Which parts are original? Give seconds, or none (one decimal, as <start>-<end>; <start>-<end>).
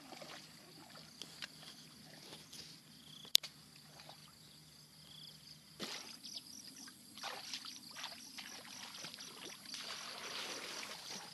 0.0-11.3